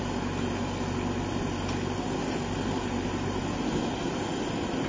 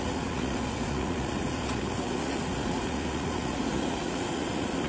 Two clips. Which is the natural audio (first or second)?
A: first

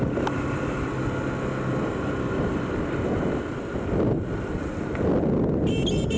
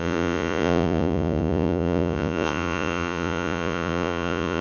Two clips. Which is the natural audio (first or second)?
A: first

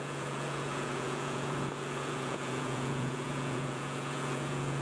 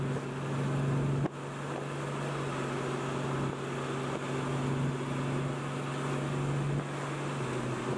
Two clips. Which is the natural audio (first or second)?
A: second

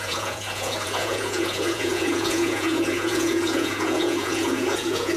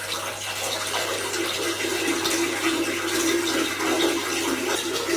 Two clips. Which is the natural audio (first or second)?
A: second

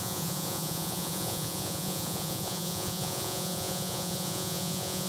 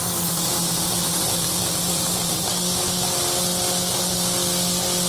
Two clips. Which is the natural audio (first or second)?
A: second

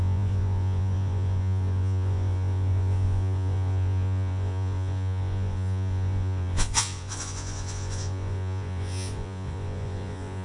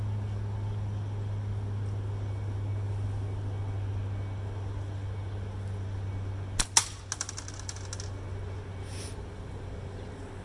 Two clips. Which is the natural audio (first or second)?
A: second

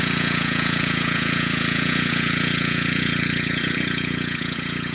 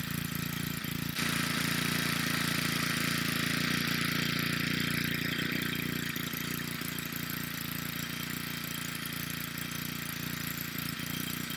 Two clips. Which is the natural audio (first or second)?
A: second